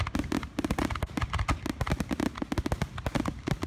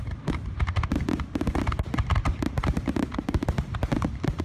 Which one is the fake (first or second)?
second